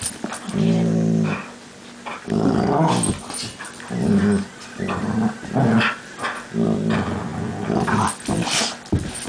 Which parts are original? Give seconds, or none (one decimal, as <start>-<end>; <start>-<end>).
0.0-9.3